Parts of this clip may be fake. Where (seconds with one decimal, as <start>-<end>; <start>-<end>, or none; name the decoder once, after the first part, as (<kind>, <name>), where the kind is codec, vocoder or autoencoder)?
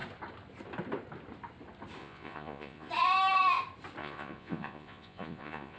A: 2.0-2.9 (vocoder, Vocos); 4.0-5.8